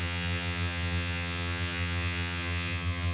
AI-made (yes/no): yes